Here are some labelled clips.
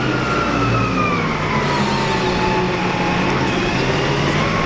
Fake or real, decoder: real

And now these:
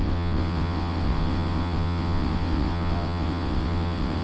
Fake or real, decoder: fake, vocoder, WaveNeXt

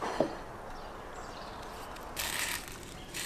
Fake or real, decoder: real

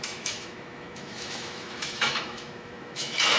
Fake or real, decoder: fake, autoencoder, DAC-VAE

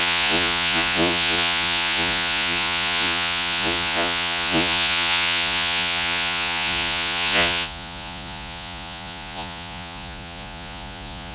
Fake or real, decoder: fake, vocoder, Vocos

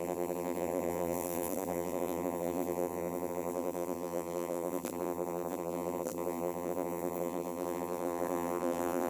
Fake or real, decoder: fake, vocoder, BigVGAN v2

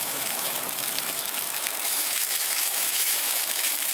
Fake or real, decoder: fake, autoencoder, DAC-VAE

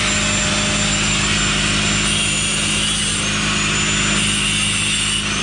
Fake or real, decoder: real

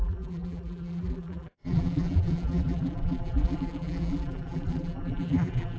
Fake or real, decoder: fake, vocoder, BigVGAN v2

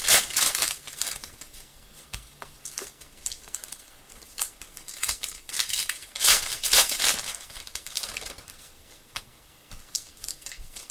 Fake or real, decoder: fake, codec, SNAC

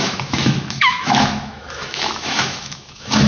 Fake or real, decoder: fake, autoencoder, DAC-VAE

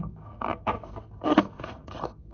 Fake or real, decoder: fake, codec, SNAC